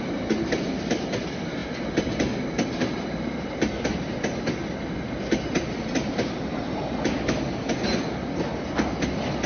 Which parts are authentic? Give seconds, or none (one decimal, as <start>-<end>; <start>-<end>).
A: 0.0-9.5